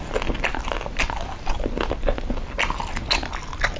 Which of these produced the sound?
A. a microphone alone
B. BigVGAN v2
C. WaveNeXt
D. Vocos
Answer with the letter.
A